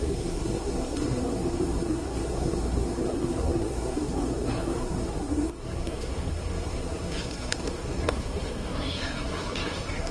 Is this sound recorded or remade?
remade